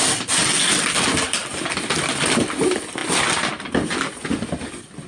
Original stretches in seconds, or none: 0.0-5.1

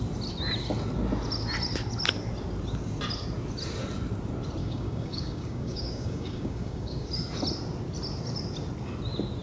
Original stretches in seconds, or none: 0.0-4.6; 7.1-9.4

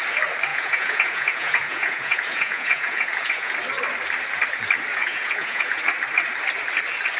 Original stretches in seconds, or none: 0.0-0.5; 3.5-4.9; 5.8-7.2

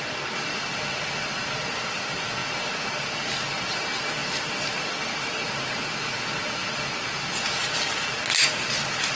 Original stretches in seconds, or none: 0.0-9.1

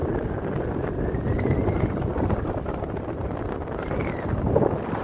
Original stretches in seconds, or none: 3.0-5.0